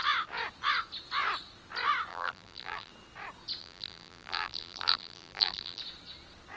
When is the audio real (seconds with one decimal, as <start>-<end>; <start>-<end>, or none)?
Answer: 0.0-2.1; 2.9-3.6; 5.8-6.6